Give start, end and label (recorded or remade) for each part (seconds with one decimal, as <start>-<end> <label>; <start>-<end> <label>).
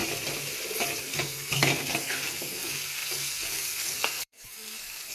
0.0-1.0 recorded; 1.0-5.1 remade